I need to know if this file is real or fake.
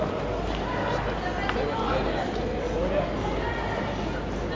real